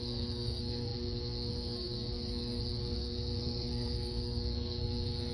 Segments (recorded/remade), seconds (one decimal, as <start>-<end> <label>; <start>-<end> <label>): 0.0-5.3 remade

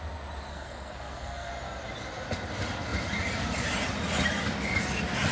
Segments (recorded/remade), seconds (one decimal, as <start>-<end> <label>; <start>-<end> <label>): 0.0-0.5 recorded; 0.5-1.5 remade; 1.5-5.3 recorded

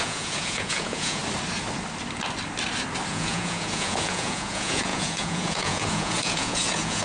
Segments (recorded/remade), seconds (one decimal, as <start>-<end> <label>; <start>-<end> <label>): 0.0-1.2 remade; 1.2-3.1 recorded; 3.1-7.0 remade

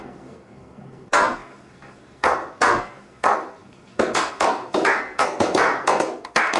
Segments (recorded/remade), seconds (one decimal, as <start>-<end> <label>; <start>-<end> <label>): 0.0-6.6 remade